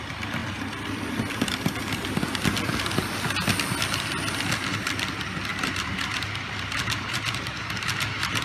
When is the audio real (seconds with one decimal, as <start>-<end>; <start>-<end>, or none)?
0.0-5.5